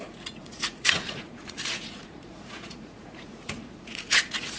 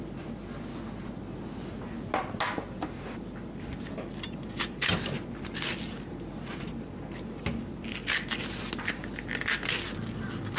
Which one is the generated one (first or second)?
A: first